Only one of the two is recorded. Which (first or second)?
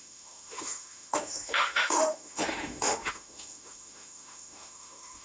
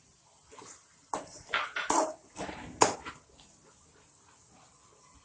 second